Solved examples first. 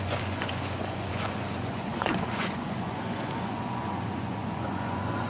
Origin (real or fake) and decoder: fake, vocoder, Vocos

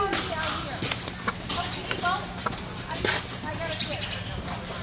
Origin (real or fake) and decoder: real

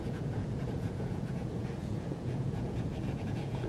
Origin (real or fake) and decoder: fake, vocoder, Vocos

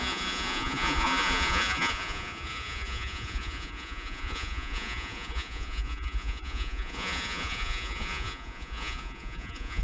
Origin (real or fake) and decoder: fake, vocoder, Vocos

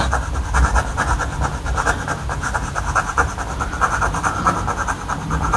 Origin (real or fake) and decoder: real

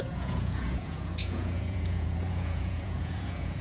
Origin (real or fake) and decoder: fake, vocoder, Vocos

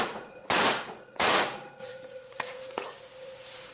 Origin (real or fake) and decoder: fake, vocoder, Vocos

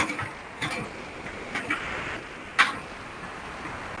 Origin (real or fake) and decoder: real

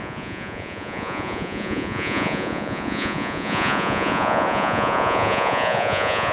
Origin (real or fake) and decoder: fake, vocoder, Vocos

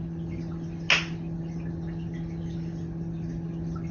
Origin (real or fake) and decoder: real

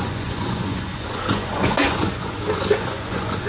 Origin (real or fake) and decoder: fake, vocoder, Vocos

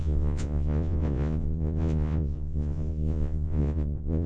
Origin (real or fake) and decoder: fake, vocoder, Vocos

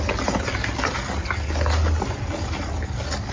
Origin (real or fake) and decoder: real